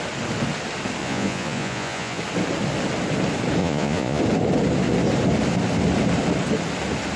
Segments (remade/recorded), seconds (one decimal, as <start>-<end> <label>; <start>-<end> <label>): 0.0-1.0 recorded; 1.0-2.2 remade; 2.2-3.6 recorded; 3.6-4.2 remade; 4.2-7.2 recorded